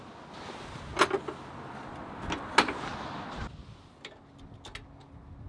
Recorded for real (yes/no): yes